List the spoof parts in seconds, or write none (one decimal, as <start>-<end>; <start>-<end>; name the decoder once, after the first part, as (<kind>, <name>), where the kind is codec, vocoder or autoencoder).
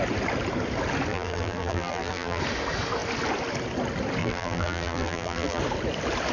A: 1.1-2.4 (vocoder, BigVGAN v2); 4.2-5.6